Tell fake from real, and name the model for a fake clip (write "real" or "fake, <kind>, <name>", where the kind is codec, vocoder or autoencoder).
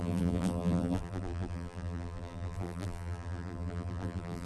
fake, vocoder, BigVGAN v2